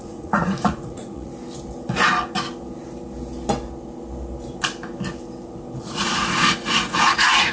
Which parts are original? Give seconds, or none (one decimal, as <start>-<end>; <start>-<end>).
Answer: 1.3-5.8